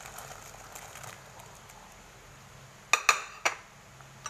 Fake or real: real